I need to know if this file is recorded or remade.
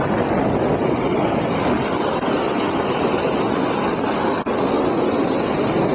recorded